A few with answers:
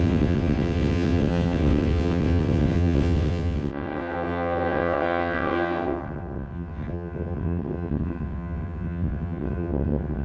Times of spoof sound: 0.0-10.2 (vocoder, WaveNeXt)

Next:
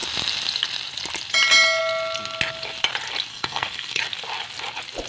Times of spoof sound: 3.3-4.0 (codec, SNAC)